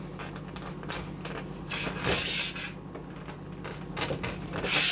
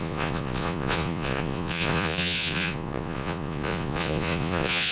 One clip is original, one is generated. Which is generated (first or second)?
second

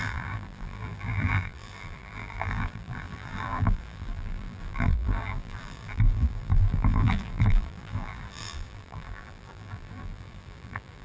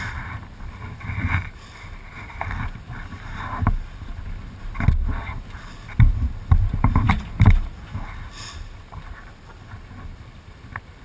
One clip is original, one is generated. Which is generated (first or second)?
first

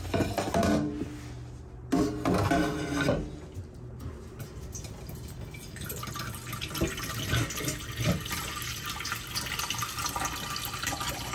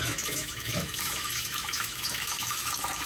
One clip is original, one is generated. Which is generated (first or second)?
second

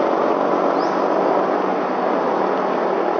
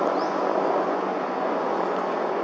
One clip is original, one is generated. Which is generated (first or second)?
second